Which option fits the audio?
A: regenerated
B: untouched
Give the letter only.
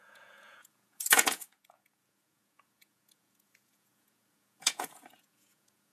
A